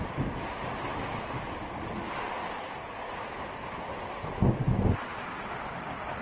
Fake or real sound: real